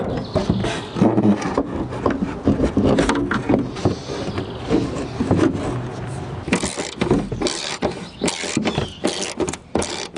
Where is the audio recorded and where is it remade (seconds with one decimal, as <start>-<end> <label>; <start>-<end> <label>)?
0.0-10.2 recorded